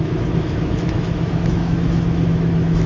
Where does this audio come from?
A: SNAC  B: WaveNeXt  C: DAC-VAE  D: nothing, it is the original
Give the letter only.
C